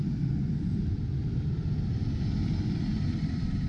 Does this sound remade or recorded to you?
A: recorded